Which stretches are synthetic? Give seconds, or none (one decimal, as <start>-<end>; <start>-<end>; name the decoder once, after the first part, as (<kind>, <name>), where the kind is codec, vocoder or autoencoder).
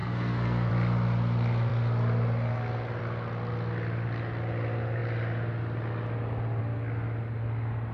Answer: 0.0-0.7 (codec, SNAC)